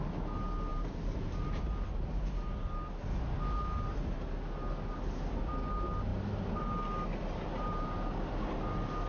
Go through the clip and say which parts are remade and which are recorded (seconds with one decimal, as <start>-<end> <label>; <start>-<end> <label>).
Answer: 0.0-0.7 recorded; 0.7-1.6 remade; 1.6-7.1 recorded; 7.1-8.1 remade; 8.1-9.1 recorded